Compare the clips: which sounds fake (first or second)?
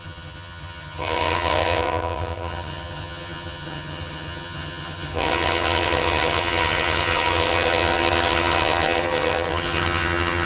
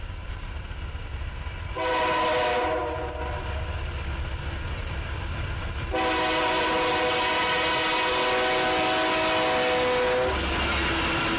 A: first